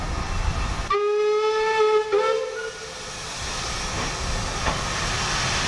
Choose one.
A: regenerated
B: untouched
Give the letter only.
B